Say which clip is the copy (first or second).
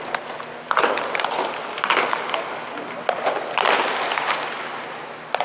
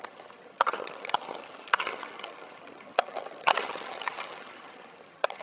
second